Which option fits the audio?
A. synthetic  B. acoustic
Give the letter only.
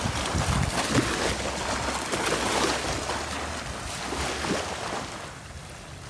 B